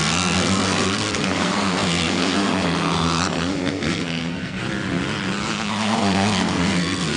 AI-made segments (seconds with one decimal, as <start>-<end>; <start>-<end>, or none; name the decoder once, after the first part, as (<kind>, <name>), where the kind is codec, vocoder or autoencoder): 0.0-4.6 (codec, SNAC); 5.5-7.2